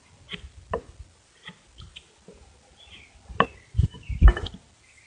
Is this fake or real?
real